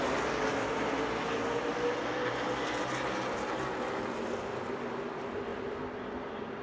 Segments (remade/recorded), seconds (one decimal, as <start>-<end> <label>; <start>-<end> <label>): 0.0-6.6 recorded